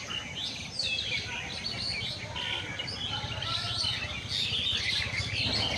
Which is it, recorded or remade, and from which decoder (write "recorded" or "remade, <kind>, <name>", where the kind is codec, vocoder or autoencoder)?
recorded